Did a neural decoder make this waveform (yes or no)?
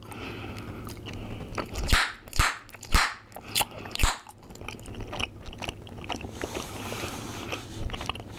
no